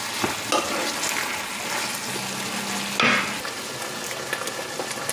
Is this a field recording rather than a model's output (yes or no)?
yes